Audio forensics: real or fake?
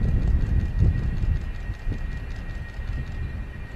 real